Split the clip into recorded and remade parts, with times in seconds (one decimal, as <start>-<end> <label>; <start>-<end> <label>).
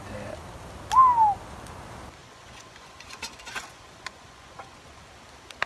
0.0-2.2 recorded; 2.2-5.1 remade; 5.1-5.7 recorded